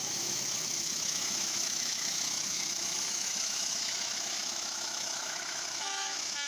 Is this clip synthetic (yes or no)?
yes